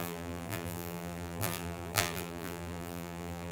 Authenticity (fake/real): fake